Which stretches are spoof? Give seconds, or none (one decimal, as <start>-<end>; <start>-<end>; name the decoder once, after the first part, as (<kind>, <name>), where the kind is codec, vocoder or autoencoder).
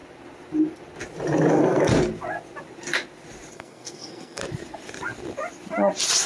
1.5-1.9 (codec, SNAC); 3.5-4.4